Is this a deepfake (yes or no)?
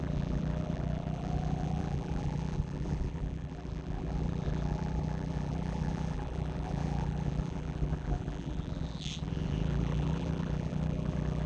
yes